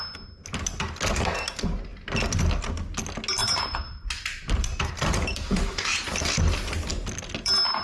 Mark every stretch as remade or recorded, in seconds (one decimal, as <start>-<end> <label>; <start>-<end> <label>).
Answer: 0.0-3.4 recorded; 3.4-6.1 remade; 6.1-7.8 recorded